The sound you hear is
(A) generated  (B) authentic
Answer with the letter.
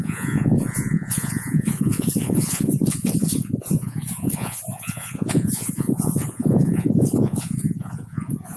A